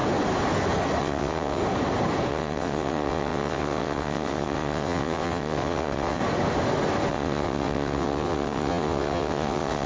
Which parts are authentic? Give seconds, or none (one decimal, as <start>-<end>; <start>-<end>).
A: 0.0-1.0; 1.6-2.3; 6.2-7.1